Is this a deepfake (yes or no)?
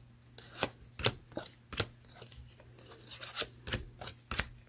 no